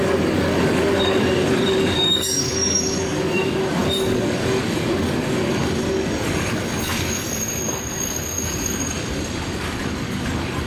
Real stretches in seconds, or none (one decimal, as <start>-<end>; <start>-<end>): none